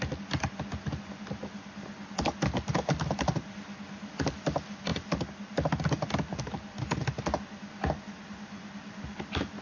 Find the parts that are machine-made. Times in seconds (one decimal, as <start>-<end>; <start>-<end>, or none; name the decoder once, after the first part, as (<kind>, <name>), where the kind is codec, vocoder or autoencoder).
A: none